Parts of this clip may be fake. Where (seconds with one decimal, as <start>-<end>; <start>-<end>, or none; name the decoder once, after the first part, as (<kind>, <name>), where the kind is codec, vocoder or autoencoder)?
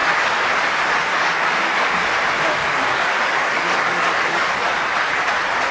1.1-1.9 (codec, DAC); 2.6-4.5